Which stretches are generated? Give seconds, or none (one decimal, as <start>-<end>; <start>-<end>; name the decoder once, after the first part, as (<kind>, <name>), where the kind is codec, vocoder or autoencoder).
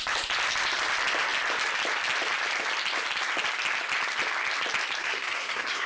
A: 5.0-5.9 (codec, SNAC)